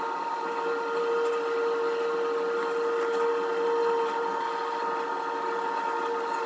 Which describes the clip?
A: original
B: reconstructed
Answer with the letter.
A